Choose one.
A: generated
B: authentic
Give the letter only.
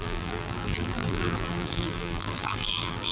A